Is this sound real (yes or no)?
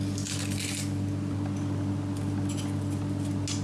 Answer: yes